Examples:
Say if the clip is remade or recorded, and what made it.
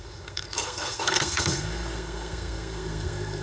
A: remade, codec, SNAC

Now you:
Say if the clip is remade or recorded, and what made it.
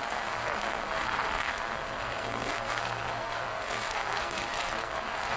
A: remade, codec, SNAC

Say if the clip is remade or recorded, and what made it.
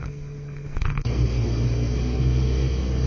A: remade, codec, SNAC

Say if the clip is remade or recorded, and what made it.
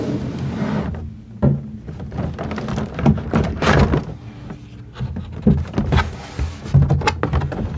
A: recorded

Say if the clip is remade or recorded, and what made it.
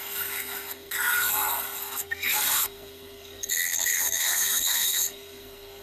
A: remade, codec, SNAC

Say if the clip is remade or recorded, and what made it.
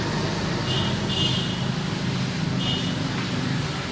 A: recorded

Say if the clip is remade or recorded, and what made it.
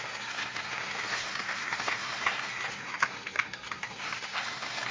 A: remade, codec, SNAC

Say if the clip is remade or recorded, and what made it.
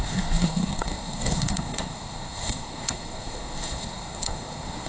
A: remade, codec, SNAC